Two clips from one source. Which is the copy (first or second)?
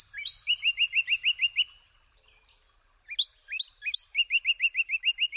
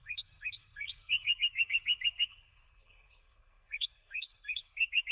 second